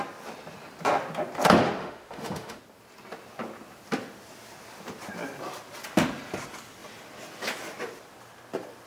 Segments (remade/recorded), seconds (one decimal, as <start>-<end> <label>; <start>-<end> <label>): 0.0-1.8 recorded; 1.8-2.6 remade; 2.6-8.9 recorded